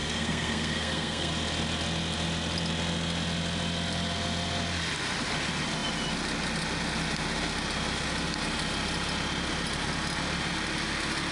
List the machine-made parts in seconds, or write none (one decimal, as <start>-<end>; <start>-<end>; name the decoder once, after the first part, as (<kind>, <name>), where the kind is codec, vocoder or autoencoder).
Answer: 0.0-1.3 (codec, SNAC)